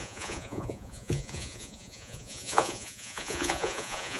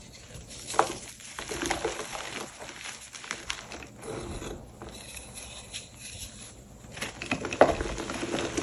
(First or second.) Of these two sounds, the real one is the second